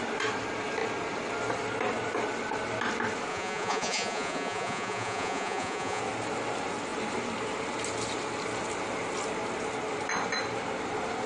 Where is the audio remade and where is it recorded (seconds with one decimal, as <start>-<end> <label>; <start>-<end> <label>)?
0.0-3.3 recorded; 3.3-6.0 remade; 6.0-11.3 recorded